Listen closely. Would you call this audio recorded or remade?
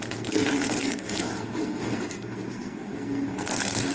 remade